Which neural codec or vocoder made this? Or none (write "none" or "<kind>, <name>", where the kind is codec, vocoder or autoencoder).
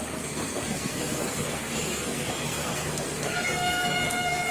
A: codec, SNAC